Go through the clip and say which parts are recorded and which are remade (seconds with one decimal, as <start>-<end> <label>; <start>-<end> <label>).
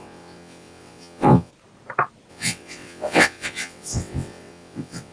0.0-1.5 remade; 1.5-2.3 recorded; 2.3-5.1 remade